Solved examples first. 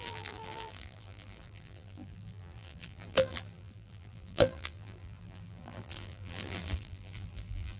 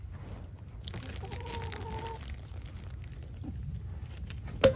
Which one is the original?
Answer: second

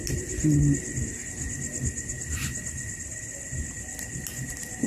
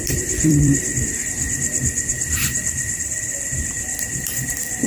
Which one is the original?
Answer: first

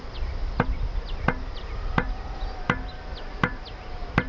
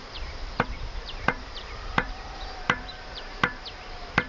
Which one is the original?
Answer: first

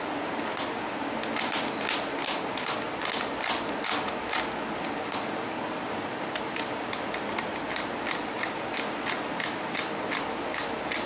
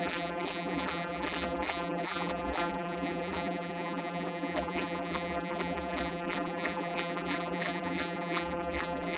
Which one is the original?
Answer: first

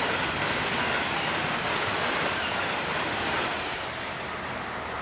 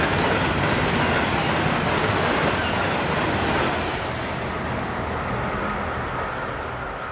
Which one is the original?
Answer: second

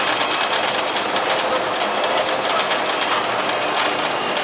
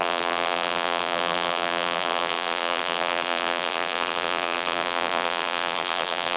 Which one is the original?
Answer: first